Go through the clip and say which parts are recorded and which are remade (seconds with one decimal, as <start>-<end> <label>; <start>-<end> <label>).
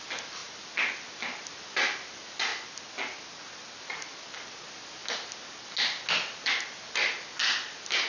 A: 0.0-8.1 recorded